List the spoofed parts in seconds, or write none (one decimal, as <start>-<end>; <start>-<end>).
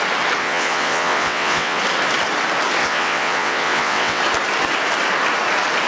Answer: 0.4-1.8; 2.8-4.2